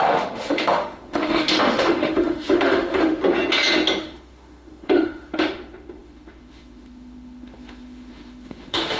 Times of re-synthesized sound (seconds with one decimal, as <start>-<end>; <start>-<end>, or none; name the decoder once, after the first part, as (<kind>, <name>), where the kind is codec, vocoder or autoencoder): 0.0-3.2 (autoencoder, DAC-VAE); 4.0-9.0